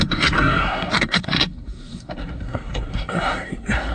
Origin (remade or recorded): remade